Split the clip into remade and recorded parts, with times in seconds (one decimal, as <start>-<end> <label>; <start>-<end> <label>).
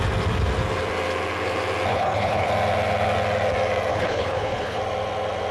0.0-1.9 recorded; 1.9-2.5 remade; 2.5-3.9 recorded; 3.9-4.8 remade; 4.8-5.5 recorded